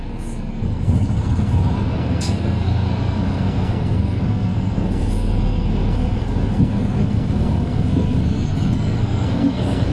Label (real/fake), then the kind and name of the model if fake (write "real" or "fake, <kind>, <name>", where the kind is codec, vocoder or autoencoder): fake, codec, SNAC